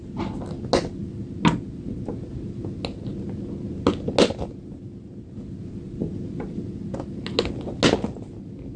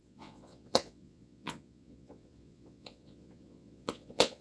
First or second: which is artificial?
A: second